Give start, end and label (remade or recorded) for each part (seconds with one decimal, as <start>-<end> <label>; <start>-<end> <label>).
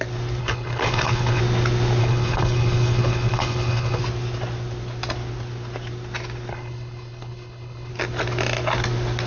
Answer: 0.0-0.4 recorded; 0.4-1.4 remade; 1.4-2.0 recorded; 2.0-4.0 remade; 4.0-6.5 recorded; 6.5-7.9 remade; 7.9-9.3 recorded